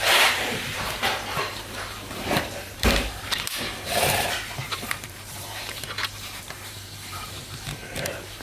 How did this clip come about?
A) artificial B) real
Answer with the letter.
A